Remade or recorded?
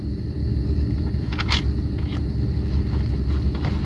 recorded